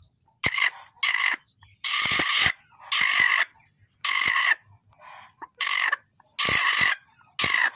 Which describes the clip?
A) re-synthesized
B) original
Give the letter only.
B